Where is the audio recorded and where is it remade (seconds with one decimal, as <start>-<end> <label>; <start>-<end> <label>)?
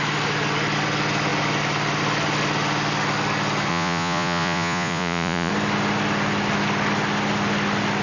0.0-3.7 recorded; 3.7-5.5 remade; 5.5-8.0 recorded